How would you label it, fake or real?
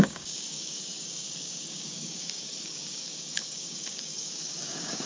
fake